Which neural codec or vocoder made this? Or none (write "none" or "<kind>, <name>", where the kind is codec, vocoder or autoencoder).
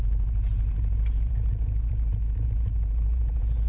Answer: vocoder, BigVGAN v2